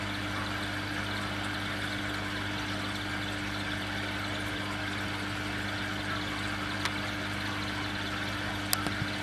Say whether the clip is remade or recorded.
recorded